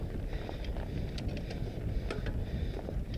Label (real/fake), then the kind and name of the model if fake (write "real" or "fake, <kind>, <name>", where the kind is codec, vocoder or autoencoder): real